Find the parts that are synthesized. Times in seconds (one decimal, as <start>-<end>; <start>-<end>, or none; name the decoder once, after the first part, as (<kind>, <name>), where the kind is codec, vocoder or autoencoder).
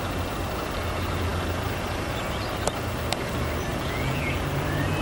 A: 3.7-4.4 (vocoder, Vocos)